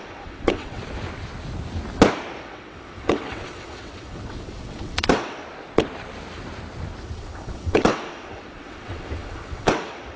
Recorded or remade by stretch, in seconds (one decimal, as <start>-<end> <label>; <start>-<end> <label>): 0.0-0.8 remade; 0.8-2.4 recorded; 2.4-5.4 remade; 5.4-7.0 recorded; 7.0-10.2 remade